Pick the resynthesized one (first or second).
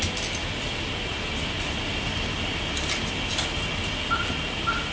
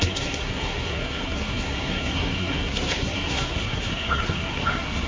second